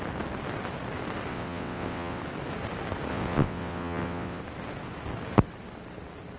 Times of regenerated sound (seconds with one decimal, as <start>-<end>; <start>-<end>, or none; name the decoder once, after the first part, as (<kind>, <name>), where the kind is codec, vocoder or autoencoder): 1.3-2.2 (vocoder, WaveNeXt); 3.1-4.4